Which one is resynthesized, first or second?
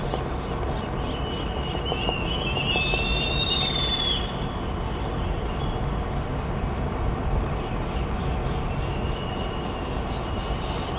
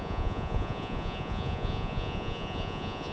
second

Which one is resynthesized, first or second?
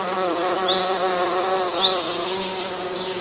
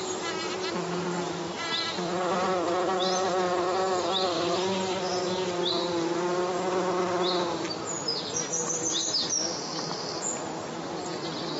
first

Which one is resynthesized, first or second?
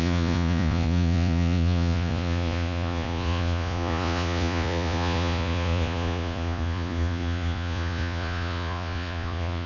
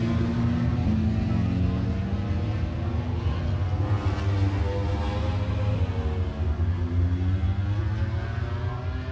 first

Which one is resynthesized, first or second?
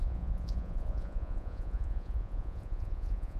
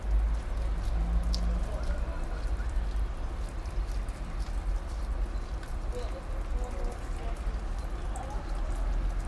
first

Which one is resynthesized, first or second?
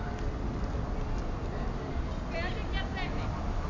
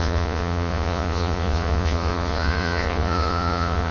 second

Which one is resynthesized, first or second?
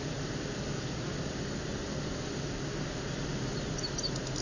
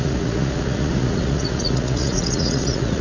second